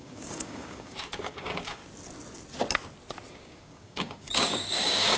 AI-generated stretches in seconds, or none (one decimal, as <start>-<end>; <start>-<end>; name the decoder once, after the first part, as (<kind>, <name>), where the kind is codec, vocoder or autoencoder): 0.0-1.8 (codec, DAC); 3.3-5.2